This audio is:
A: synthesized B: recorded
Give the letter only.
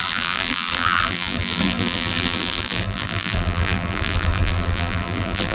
A